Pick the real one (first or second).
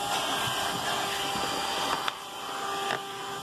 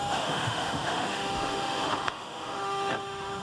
first